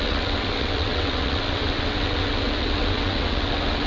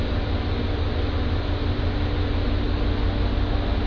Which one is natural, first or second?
second